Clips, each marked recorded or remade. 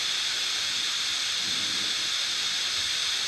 recorded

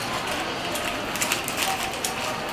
recorded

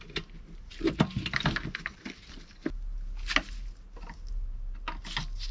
recorded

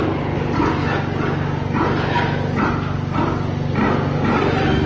recorded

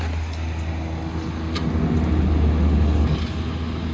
recorded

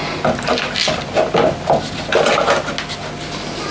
recorded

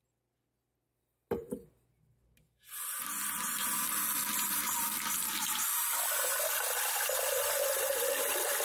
recorded